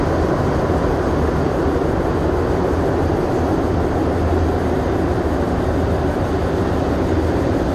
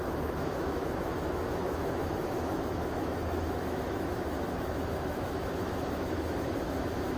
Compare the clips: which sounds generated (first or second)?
second